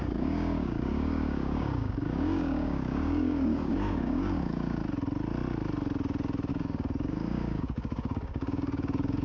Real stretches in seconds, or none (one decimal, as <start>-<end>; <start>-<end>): 4.8-6.5